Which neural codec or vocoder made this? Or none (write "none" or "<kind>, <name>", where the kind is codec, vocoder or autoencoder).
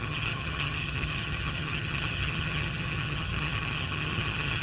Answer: vocoder, HiFi-GAN